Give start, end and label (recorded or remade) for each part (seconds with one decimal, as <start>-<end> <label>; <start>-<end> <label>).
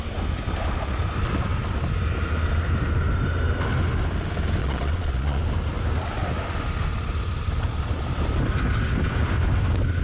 0.0-4.6 recorded; 4.6-5.4 remade; 5.4-10.0 recorded